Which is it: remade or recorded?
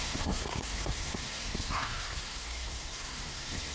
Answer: remade